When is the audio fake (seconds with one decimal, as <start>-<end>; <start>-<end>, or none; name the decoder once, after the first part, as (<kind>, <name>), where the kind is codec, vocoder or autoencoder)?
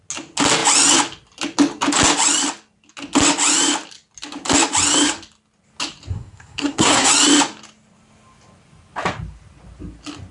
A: 6.1-7.1 (codec, SNAC)